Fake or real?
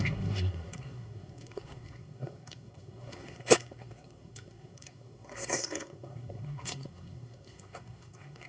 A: fake